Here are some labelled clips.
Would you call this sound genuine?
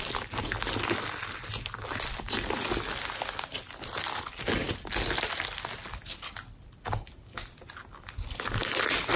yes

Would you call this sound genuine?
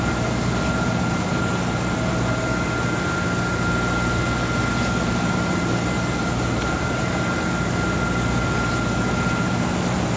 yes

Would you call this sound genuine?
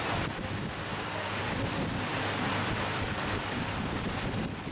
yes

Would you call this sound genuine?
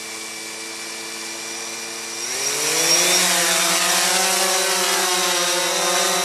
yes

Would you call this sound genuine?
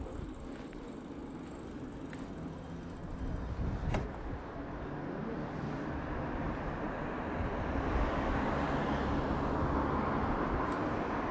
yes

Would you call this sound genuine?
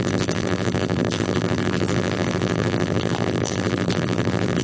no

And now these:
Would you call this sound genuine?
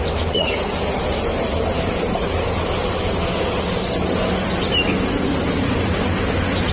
yes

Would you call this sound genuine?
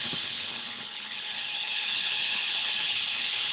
no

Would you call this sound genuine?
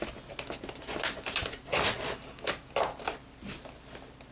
yes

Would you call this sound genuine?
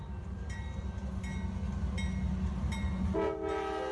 yes